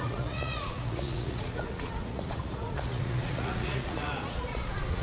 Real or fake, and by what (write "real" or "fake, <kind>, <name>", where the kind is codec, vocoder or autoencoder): fake, vocoder, Vocos